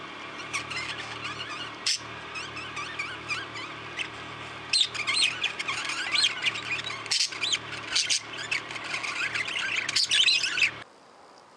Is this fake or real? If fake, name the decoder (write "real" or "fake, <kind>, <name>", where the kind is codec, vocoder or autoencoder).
real